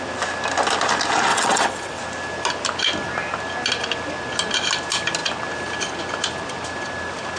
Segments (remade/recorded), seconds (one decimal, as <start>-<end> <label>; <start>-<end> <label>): 0.0-1.3 recorded; 1.3-2.0 remade; 2.0-7.4 recorded